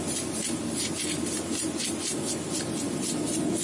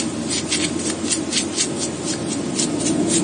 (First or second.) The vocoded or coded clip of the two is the first